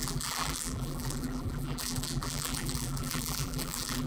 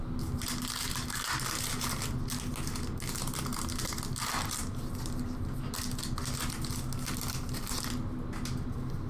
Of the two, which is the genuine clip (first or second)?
second